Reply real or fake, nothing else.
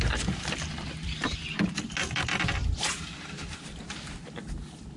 real